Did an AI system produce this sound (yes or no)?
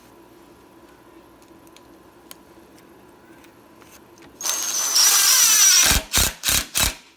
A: no